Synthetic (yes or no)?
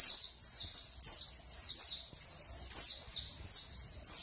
no